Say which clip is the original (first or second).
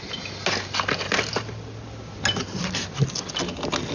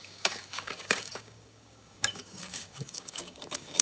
first